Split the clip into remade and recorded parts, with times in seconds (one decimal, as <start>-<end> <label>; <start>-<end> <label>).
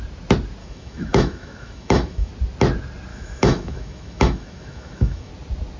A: 0.0-0.6 recorded; 0.6-2.3 remade; 2.3-3.1 recorded; 3.1-5.3 remade; 5.3-5.8 recorded